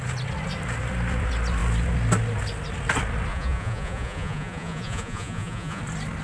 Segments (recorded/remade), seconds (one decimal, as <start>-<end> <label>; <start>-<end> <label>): 0.0-3.3 recorded; 3.3-5.8 remade; 5.8-6.2 recorded